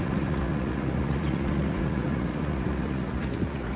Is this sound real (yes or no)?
no